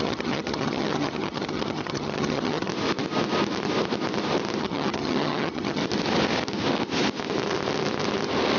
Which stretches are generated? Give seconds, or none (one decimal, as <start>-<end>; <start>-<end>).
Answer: 0.0-2.7; 4.6-5.8

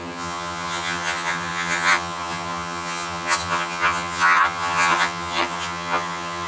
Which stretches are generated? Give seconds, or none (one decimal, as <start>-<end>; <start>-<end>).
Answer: 0.0-6.5

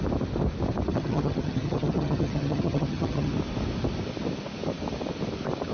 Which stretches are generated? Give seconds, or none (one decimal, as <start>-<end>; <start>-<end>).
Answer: 0.9-3.3

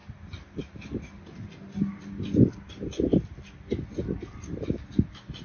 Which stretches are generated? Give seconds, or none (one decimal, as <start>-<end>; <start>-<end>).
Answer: none